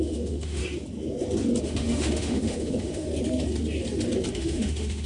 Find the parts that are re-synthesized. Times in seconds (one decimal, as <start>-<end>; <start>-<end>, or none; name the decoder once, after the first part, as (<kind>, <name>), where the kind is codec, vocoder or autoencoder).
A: 0.0-0.6 (autoencoder, DAC-VAE); 1.6-3.1; 4.3-5.1